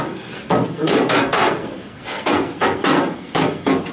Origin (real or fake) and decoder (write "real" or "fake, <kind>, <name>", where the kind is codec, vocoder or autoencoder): fake, codec, SNAC